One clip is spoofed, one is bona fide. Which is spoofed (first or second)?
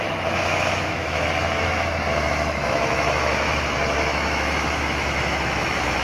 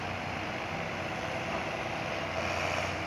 first